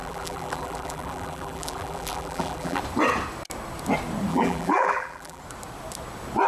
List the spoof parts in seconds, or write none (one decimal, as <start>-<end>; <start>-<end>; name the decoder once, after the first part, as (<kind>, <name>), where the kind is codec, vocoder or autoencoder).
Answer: 0.0-2.8 (vocoder, BigVGAN v2); 4.3-5.4